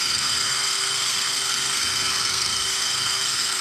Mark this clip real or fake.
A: fake